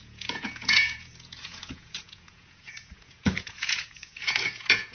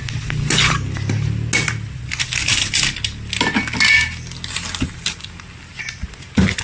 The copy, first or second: first